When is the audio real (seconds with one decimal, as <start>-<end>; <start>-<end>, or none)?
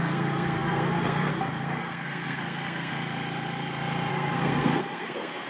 2.9-4.1